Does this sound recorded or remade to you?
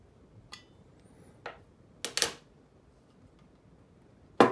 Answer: recorded